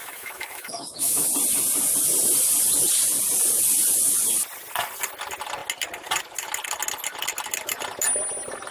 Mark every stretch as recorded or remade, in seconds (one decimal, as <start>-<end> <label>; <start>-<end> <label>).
0.0-1.3 remade; 1.3-8.7 recorded